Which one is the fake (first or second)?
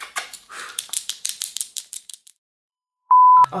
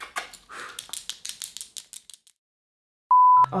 first